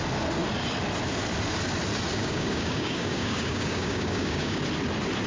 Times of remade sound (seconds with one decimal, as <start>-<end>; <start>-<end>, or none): 2.2-4.6

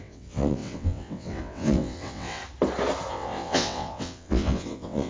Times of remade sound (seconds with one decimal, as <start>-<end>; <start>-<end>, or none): 0.0-2.4; 3.1-5.1

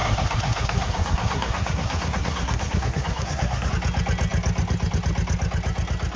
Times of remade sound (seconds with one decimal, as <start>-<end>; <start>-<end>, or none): 0.0-3.7

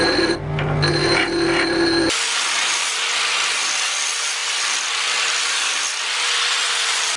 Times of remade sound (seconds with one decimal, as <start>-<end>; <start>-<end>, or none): none

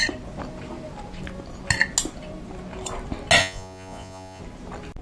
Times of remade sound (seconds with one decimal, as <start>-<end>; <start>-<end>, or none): 3.4-4.4